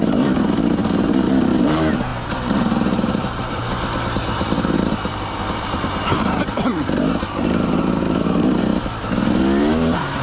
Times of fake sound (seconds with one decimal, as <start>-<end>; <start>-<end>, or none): 0.0-3.6; 4.2-8.7; 9.6-10.2

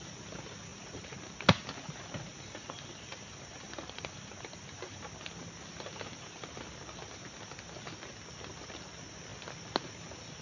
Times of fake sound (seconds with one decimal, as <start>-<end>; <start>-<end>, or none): 0.7-1.2; 2.3-5.0